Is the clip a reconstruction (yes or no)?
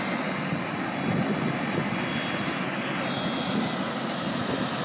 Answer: no